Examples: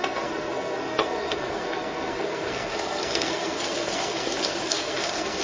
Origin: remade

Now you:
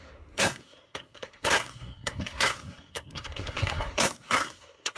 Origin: remade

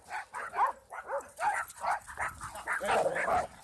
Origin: recorded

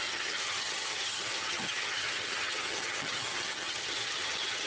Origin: remade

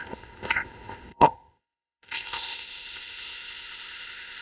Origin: remade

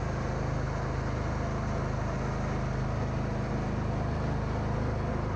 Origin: recorded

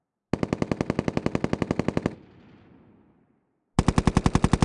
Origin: recorded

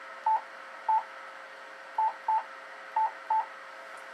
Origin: recorded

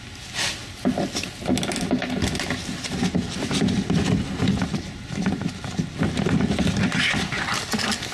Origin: recorded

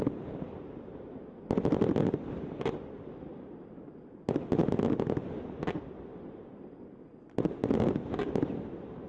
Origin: recorded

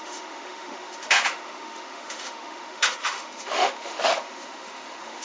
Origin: remade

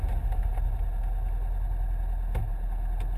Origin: recorded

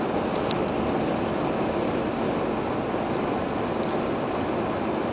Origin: recorded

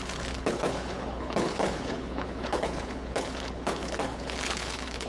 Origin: remade